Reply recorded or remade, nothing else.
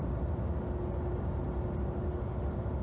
recorded